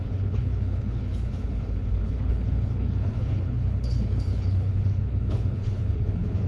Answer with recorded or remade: remade